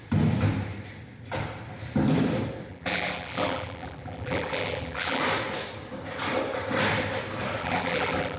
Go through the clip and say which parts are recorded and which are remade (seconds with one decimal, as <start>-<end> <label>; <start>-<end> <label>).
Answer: 0.0-2.7 recorded; 2.7-5.2 remade; 5.2-7.6 recorded; 7.6-8.4 remade